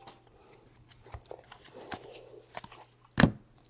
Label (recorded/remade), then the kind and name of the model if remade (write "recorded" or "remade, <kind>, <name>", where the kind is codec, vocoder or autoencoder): recorded